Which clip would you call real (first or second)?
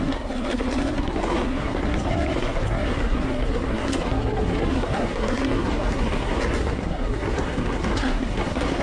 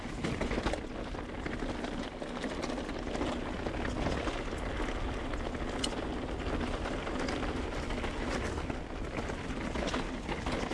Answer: second